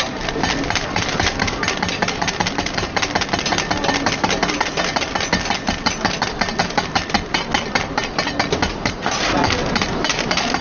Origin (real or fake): fake